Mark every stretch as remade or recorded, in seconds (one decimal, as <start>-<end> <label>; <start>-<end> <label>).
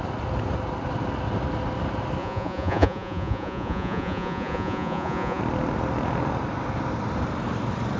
0.0-2.2 recorded; 2.2-5.4 remade; 5.4-8.0 recorded